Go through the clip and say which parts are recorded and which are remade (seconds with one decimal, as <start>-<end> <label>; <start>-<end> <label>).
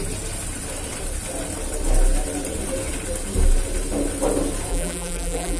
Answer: 0.0-4.7 recorded; 4.7-5.6 remade